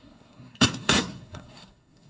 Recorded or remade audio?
remade